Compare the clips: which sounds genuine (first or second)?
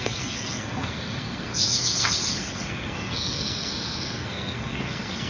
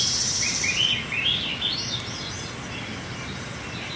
second